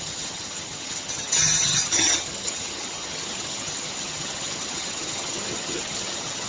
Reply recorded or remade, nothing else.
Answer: remade